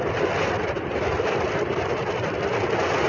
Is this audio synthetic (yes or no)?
no